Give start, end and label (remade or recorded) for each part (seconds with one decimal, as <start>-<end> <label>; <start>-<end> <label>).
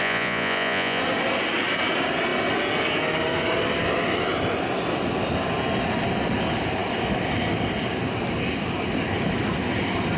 0.0-1.0 remade; 1.0-10.2 recorded